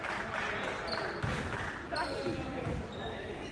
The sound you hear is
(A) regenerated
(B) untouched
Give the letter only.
B